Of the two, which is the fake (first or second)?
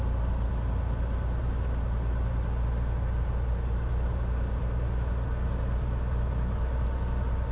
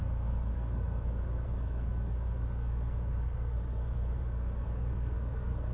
second